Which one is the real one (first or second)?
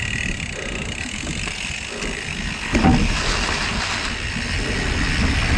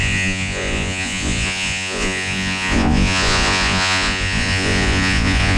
first